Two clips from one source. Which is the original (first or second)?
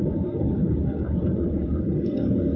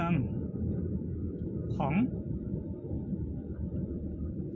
second